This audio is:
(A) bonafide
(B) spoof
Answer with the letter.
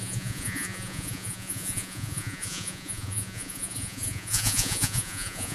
B